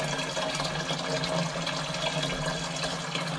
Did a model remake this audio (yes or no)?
no